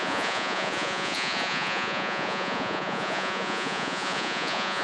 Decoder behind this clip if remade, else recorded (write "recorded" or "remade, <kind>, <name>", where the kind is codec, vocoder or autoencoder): remade, vocoder, Vocos